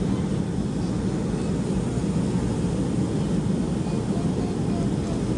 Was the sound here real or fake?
real